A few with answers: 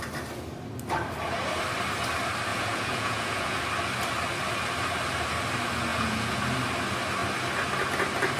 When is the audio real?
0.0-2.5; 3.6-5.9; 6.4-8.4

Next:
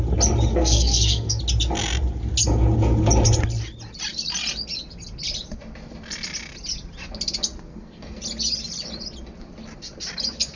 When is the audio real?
0.0-0.5; 1.4-7.7; 8.2-10.6

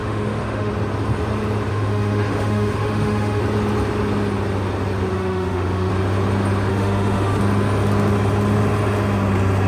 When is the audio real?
0.7-1.7; 3.4-5.1; 5.9-6.7; 7.4-9.7

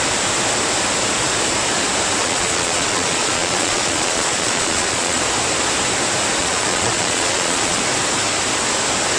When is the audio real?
0.0-2.2; 5.2-6.4; 7.8-9.2

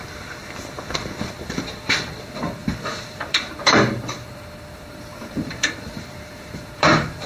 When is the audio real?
0.0-2.6

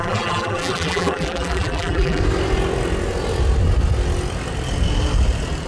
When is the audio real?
2.2-5.7